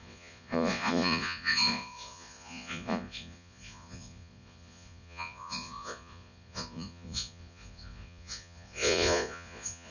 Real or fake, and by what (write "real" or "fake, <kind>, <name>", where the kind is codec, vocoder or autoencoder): fake, vocoder, Vocos